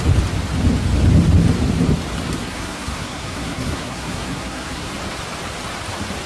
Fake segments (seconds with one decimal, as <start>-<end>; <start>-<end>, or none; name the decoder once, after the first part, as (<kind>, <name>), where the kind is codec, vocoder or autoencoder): 2.4-4.9 (codec, SNAC)

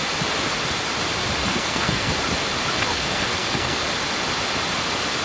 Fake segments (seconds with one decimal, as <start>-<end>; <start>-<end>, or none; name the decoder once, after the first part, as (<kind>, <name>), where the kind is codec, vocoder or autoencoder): 1.4-2.1 (codec, SNAC); 2.9-3.8

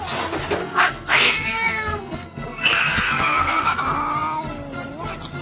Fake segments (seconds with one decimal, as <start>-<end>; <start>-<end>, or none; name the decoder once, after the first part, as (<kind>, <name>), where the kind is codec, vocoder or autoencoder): 0.6-3.8 (codec, SNAC)

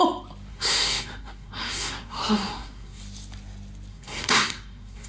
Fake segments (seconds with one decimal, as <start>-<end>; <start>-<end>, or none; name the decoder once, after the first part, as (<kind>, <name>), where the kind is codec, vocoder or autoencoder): 0.5-3.0 (codec, SNAC); 3.9-5.1

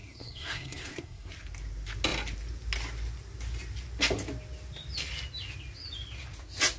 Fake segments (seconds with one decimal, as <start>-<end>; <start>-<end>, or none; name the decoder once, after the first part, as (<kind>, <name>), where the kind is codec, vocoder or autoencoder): 0.0-1.3 (codec, SNAC)